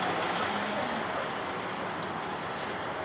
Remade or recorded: recorded